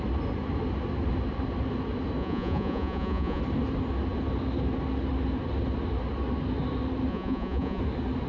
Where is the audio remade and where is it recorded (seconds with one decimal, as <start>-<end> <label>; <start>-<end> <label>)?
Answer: 0.0-2.2 recorded; 2.2-3.4 remade; 3.4-7.1 recorded; 7.1-7.8 remade; 7.8-8.3 recorded